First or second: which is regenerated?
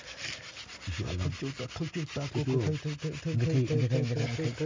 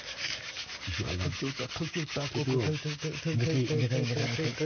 second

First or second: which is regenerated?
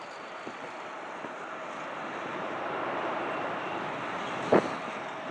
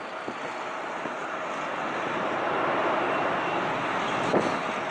first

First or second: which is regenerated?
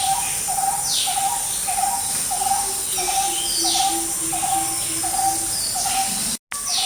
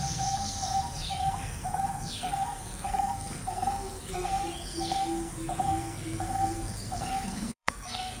second